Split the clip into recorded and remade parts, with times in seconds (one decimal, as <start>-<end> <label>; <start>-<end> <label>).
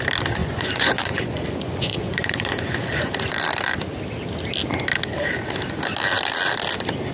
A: 0.0-0.4 recorded; 0.4-3.1 remade; 3.1-7.1 recorded